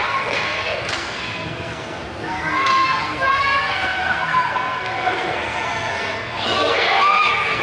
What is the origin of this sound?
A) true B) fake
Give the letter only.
B